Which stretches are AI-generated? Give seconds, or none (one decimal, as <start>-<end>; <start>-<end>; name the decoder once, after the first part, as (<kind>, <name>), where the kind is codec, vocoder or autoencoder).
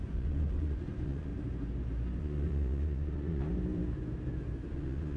0.0-1.3 (vocoder, Vocos); 2.2-3.5; 4.7-5.2